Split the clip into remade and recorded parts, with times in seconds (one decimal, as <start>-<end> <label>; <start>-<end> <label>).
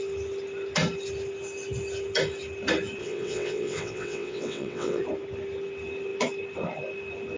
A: 0.0-3.0 recorded; 3.0-5.0 remade; 5.0-7.4 recorded